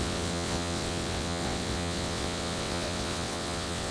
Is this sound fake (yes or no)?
yes